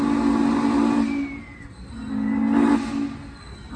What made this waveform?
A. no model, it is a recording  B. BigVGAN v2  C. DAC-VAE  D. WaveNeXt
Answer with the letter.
A